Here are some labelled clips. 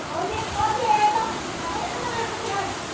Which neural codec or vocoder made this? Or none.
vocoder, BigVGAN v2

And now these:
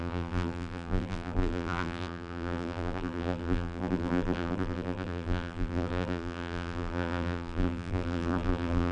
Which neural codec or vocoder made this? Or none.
vocoder, BigVGAN v2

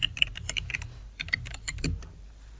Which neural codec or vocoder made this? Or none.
vocoder, BigVGAN v2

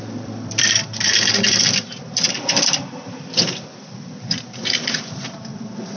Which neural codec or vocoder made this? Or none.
vocoder, BigVGAN v2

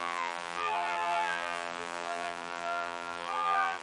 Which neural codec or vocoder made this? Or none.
vocoder, BigVGAN v2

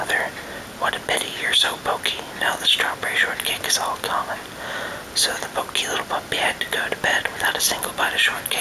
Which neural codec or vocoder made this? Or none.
none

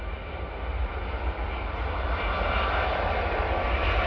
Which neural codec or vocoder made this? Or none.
none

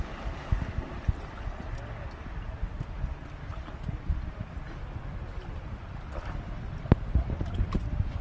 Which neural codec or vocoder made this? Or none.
none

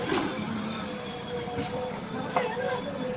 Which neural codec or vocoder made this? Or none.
vocoder, BigVGAN v2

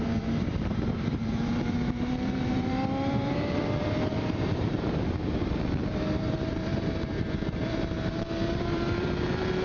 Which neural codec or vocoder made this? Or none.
vocoder, BigVGAN v2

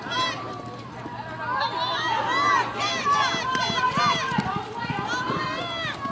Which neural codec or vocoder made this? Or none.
none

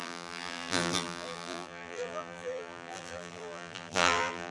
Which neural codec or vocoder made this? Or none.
vocoder, BigVGAN v2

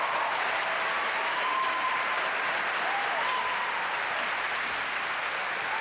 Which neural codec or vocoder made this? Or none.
none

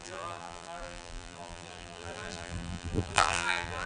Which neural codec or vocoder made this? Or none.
vocoder, BigVGAN v2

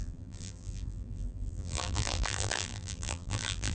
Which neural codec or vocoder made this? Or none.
vocoder, BigVGAN v2